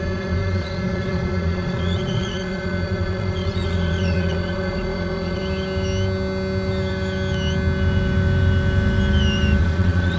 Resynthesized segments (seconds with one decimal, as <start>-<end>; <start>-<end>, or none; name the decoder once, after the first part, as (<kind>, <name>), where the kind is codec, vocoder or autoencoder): 0.0-5.4 (vocoder, Vocos); 9.6-10.2